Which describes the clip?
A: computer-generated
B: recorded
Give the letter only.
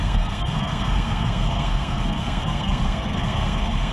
A